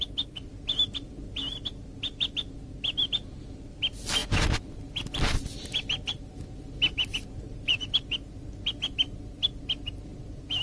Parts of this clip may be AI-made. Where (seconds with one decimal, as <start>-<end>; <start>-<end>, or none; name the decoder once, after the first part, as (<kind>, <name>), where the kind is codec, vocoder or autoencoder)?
none